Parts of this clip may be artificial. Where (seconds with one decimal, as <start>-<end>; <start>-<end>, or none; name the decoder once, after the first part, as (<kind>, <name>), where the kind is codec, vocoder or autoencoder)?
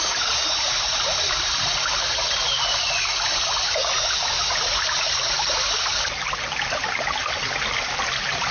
none